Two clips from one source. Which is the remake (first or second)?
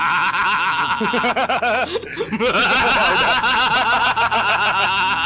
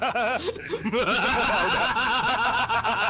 second